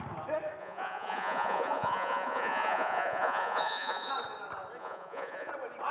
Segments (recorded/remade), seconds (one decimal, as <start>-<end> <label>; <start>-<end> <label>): 0.0-0.6 recorded; 0.6-4.1 remade; 4.1-4.8 recorded; 4.8-5.5 remade; 5.5-5.9 recorded